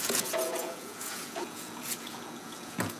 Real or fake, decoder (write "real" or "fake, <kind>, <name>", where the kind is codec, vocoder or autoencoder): fake, vocoder, Vocos